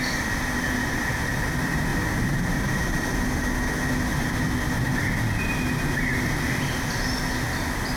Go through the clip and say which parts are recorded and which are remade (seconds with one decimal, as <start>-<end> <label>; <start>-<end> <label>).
0.0-8.0 recorded